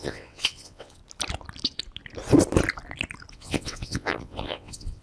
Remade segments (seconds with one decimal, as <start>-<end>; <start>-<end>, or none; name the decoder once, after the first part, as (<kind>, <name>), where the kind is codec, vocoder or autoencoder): 0.0-1.0 (vocoder, WaveNeXt); 3.3-5.0